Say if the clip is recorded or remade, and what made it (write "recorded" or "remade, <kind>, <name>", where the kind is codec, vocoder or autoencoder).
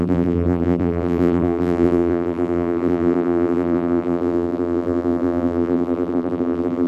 remade, vocoder, BigVGAN v2